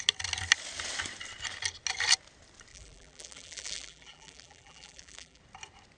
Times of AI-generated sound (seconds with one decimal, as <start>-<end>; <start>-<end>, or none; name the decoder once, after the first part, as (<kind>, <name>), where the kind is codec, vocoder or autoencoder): 2.7-5.4 (vocoder, BigVGAN v2)